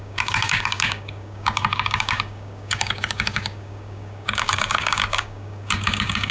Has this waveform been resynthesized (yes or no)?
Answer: yes